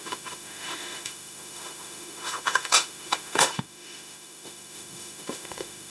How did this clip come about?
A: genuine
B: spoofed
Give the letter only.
B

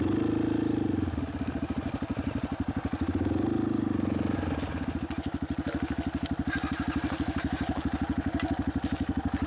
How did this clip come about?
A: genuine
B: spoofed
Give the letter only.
A